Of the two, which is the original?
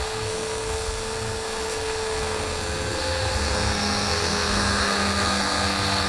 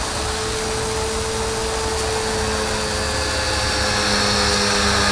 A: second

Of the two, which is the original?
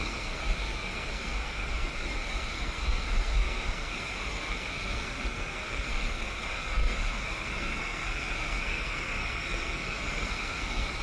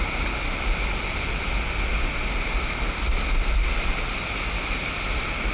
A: second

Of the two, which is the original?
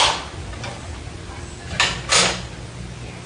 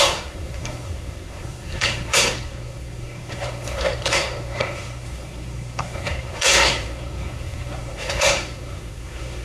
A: first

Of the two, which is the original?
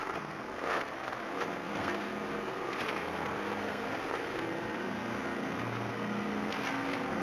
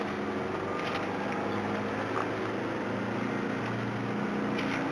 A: second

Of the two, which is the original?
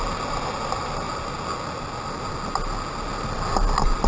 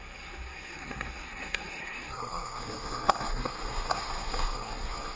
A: first